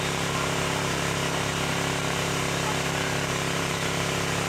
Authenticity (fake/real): fake